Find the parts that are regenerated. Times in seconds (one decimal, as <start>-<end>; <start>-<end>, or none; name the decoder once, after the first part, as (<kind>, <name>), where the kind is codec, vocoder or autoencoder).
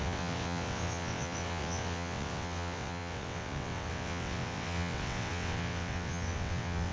0.0-6.9 (vocoder, WaveNeXt)